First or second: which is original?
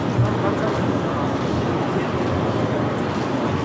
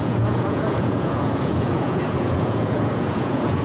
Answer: first